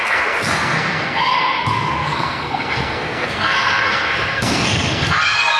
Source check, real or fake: fake